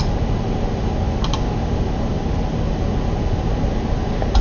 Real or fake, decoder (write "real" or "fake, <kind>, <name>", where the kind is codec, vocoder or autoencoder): real